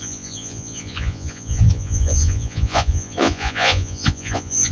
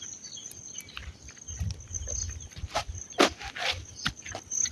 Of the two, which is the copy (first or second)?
first